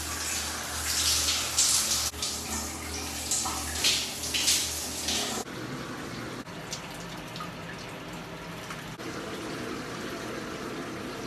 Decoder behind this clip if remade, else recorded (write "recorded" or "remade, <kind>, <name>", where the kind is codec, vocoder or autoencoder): recorded